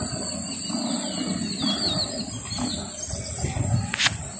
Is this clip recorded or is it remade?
recorded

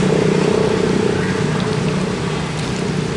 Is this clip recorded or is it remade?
recorded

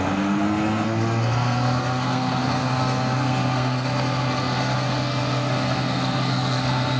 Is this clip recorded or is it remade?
remade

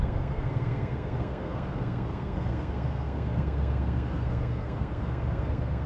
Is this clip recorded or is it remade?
remade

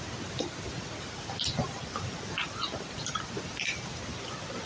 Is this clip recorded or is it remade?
recorded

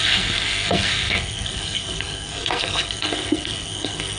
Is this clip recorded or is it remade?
remade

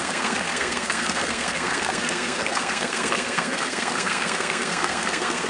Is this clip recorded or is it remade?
remade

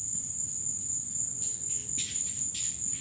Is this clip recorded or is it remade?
recorded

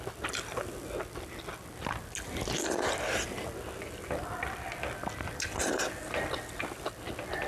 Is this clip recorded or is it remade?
recorded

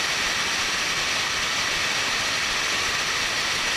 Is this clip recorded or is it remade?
recorded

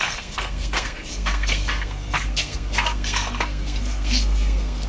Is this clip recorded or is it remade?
remade